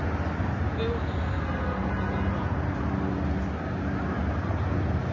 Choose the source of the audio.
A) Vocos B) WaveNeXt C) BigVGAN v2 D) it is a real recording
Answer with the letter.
D